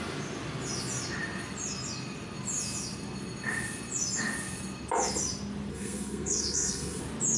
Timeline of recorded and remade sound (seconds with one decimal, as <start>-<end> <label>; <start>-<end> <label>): 0.0-5.7 recorded; 5.7-7.0 remade; 7.0-7.4 recorded